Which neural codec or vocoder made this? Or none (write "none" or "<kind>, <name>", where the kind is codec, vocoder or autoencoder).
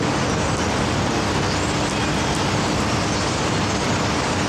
none